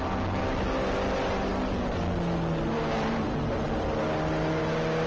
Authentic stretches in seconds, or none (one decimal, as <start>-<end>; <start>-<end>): 0.0-5.1